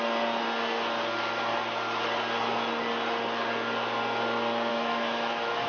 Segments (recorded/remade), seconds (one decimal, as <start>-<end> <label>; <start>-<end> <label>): 0.0-4.7 recorded; 4.7-5.7 remade